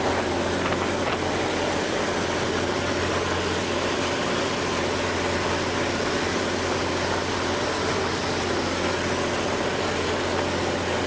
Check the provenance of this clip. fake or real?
real